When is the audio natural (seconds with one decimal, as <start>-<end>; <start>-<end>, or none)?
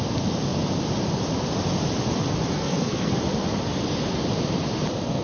0.0-2.5; 3.2-5.2